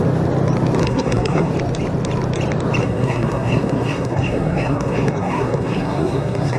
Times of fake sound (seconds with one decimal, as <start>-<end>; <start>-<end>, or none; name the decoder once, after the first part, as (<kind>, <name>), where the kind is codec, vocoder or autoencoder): 0.8-1.5 (codec, SNAC); 2.8-6.6